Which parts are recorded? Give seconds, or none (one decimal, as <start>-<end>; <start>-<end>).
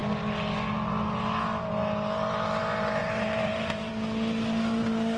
0.0-3.0; 3.9-5.2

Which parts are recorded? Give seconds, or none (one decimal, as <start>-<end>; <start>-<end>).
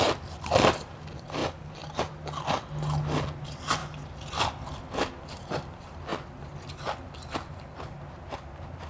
0.0-8.9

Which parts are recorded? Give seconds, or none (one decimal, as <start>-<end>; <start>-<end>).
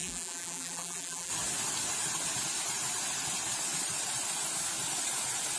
1.3-5.6